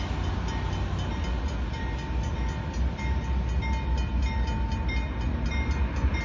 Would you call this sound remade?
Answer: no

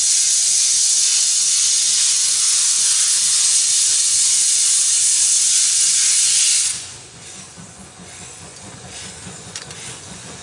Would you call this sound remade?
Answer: yes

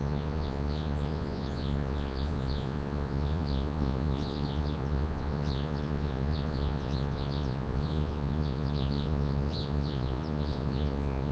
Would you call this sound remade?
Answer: yes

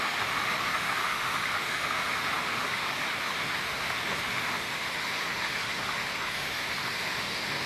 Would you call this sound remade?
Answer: yes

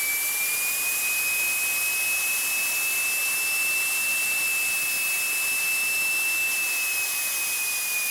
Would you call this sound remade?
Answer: no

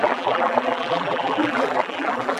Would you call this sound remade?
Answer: yes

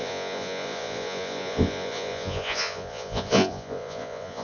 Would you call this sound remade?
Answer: yes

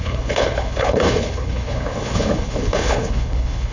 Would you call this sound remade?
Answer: yes